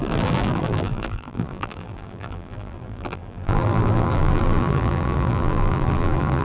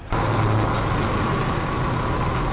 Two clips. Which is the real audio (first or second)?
second